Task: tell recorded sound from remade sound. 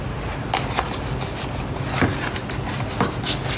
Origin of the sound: recorded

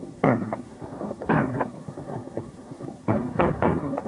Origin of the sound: remade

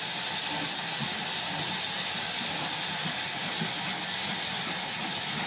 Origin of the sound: recorded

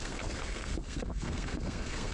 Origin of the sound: remade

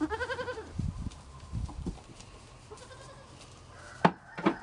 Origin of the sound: recorded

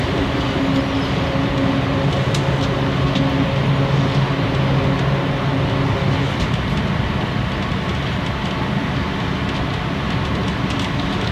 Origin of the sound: recorded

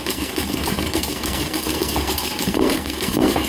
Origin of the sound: remade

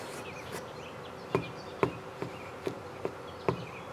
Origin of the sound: recorded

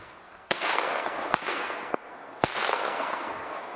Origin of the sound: remade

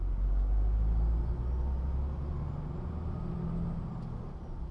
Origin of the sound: recorded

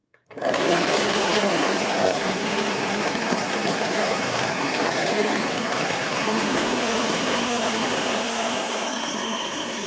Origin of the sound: remade